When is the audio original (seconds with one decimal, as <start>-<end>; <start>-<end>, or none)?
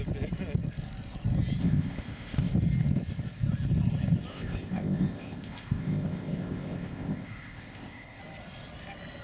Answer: 0.0-1.6; 2.5-4.3; 8.2-9.2